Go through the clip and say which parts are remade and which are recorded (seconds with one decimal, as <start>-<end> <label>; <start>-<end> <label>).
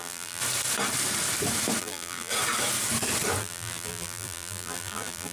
0.0-0.4 remade; 0.4-1.8 recorded; 1.8-2.3 remade; 2.3-3.4 recorded; 3.4-5.3 remade